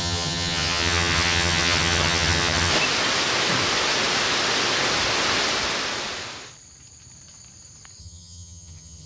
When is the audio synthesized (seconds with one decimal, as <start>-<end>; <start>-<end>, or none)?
0.0-2.7; 8.0-9.1

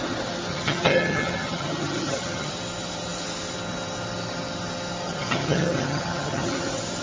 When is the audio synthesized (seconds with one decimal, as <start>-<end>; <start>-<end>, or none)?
0.5-2.5; 5.0-6.6

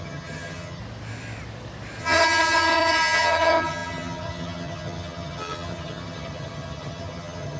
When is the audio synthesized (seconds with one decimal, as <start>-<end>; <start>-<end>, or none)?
0.0-0.8; 2.0-7.6

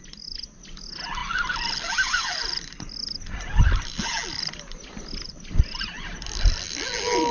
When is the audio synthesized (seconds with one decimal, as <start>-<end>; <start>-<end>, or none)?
none

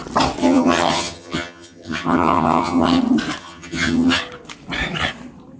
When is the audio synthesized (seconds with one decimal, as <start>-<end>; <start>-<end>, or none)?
0.4-3.0; 3.4-4.2

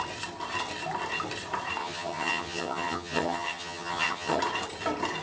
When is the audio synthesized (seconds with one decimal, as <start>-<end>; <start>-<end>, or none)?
1.8-4.4

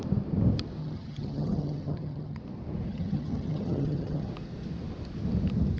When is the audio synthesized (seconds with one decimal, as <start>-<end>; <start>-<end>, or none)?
0.8-2.4; 2.9-4.3